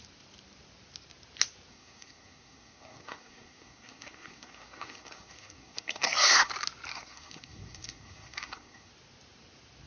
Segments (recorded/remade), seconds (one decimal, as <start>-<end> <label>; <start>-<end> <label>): 0.0-1.7 recorded; 1.7-6.5 remade; 6.5-6.9 recorded; 6.9-8.9 remade; 8.9-9.9 recorded